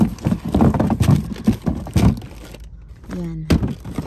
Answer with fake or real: real